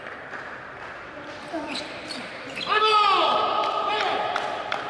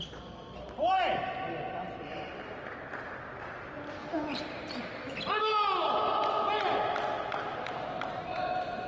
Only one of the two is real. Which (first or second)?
second